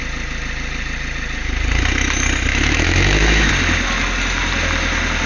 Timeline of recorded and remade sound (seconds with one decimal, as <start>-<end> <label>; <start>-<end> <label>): 0.0-2.5 recorded; 2.5-3.5 remade; 3.5-5.3 recorded